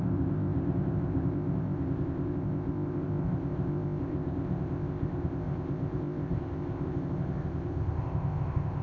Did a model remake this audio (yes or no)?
yes